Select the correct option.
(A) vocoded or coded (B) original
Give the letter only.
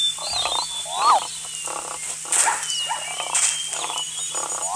B